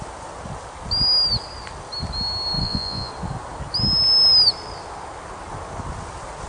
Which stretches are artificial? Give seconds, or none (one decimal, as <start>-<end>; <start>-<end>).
2.6-3.1